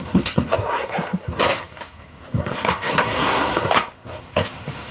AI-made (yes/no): yes